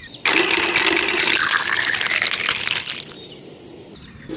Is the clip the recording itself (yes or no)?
yes